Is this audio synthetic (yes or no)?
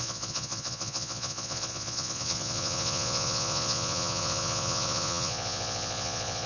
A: yes